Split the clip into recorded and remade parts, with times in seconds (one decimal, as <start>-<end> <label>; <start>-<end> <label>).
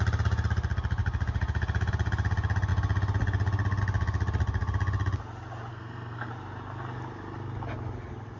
0.0-5.7 recorded; 5.7-6.3 remade; 6.3-8.4 recorded